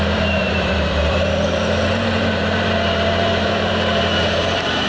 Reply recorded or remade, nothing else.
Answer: remade